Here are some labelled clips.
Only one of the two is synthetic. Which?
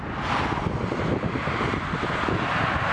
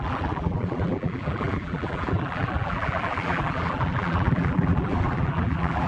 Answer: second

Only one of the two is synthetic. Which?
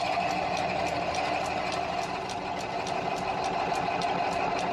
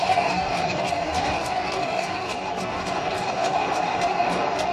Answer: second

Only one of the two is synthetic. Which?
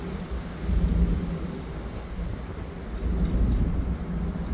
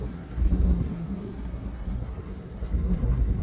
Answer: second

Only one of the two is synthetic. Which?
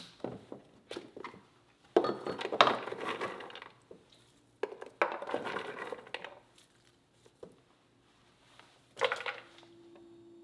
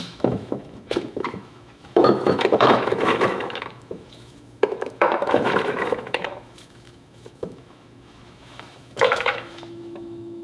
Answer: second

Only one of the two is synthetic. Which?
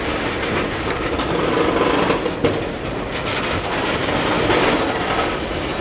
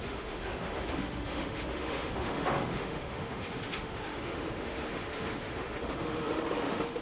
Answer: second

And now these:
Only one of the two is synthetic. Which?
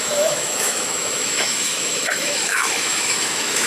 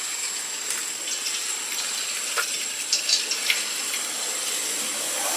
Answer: first